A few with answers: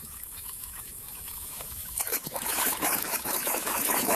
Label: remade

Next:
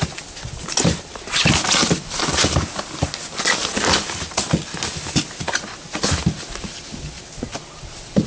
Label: recorded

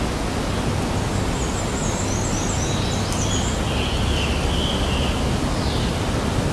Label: recorded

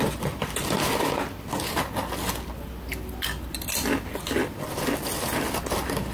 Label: recorded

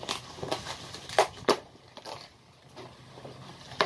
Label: recorded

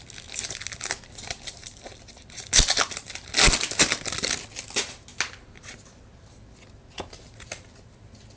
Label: recorded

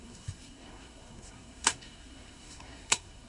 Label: remade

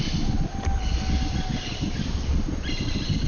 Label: recorded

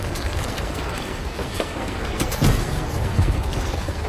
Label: remade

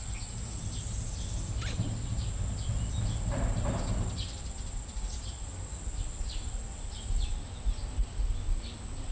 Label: recorded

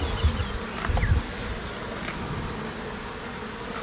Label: recorded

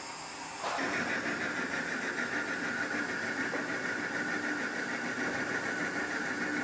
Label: recorded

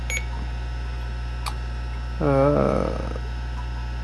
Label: recorded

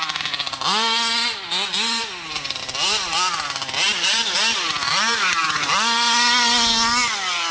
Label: recorded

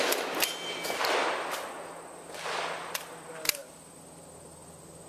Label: recorded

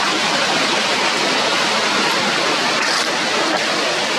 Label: recorded